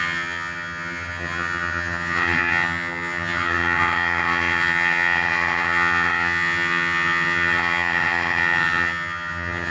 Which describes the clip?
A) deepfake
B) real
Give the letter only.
A